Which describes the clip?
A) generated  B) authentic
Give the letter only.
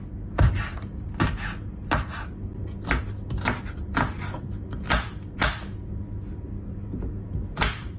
B